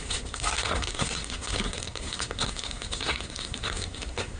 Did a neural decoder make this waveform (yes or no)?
yes